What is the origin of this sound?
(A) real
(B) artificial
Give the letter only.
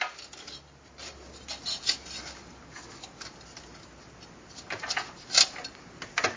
A